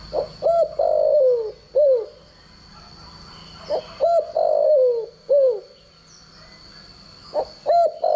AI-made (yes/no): no